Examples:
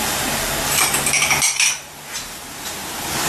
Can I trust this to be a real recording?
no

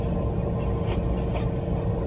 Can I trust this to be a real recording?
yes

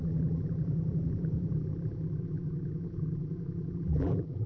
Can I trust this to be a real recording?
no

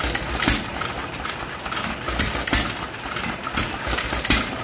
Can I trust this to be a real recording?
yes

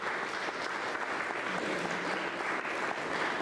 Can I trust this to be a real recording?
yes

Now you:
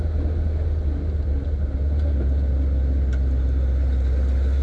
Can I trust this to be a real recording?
yes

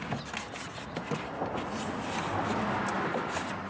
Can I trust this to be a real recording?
yes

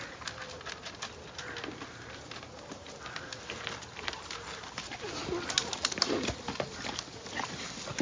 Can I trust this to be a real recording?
yes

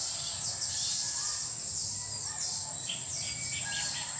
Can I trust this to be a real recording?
no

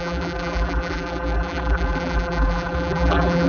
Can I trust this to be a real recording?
no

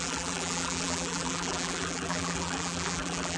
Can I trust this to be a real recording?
no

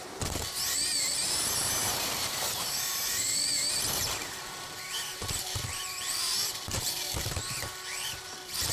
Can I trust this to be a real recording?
no